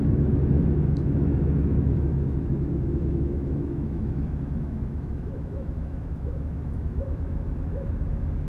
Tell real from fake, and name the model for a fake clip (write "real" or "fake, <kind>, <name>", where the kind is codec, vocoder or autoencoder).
fake, autoencoder, DAC-VAE